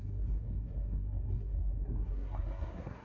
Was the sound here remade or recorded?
remade